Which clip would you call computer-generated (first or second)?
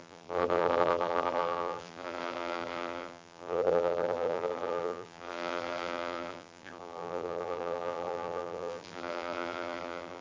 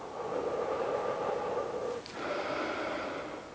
first